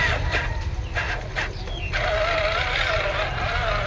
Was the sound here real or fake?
real